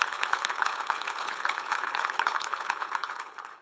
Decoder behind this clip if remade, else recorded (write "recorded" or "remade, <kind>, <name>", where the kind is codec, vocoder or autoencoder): remade, codec, HILCodec